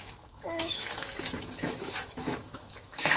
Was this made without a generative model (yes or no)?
no